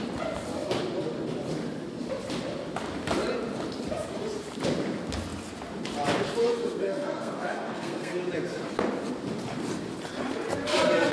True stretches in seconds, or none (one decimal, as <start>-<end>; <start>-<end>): 0.0-6.4; 8.2-11.1